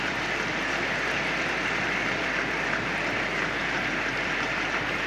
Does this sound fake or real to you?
fake